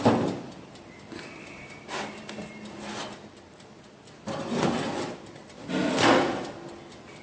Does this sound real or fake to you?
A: real